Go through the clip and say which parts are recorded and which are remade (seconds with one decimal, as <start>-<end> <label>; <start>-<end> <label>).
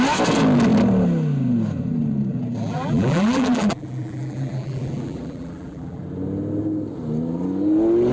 0.0-2.3 recorded; 2.3-6.0 remade; 6.0-8.1 recorded